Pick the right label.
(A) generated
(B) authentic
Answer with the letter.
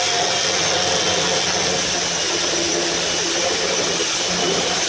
B